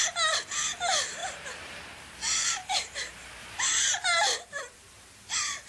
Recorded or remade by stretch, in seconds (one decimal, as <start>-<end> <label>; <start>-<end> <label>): 0.0-5.7 recorded